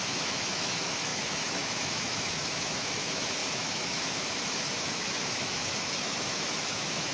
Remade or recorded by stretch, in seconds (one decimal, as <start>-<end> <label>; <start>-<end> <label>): 0.0-7.1 remade